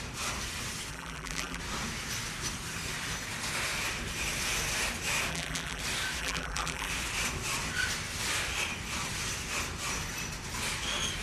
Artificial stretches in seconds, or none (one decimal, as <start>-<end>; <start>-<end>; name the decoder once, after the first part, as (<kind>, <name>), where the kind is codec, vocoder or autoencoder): 0.9-1.6 (vocoder, BigVGAN v2); 5.3-5.8; 6.2-6.9